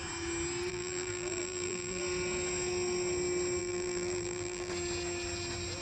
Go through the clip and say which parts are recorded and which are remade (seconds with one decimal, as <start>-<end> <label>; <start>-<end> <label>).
0.0-0.7 recorded; 0.7-2.0 remade; 2.0-3.6 recorded; 3.6-4.7 remade; 4.7-5.8 recorded